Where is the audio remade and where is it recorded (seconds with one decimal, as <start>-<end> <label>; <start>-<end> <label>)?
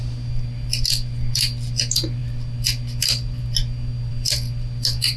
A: 0.0-5.2 recorded